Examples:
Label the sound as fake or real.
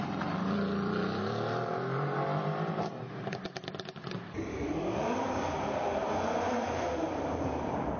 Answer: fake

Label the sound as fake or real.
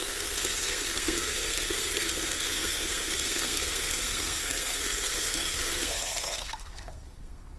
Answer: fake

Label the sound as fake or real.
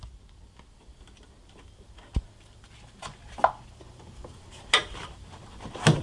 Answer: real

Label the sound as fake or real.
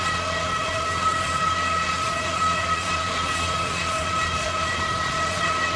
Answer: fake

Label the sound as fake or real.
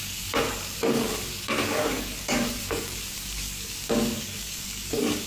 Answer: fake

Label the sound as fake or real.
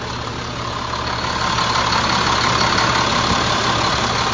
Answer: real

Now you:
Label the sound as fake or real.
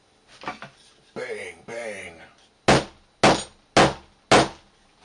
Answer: real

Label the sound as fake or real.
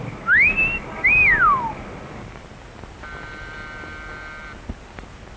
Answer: real